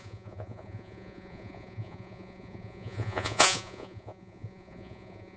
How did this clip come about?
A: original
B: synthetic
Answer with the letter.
B